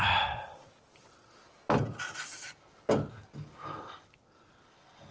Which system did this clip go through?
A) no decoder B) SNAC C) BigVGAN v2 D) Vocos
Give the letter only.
A